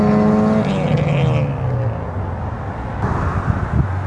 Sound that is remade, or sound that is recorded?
recorded